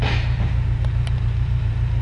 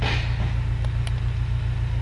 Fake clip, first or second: first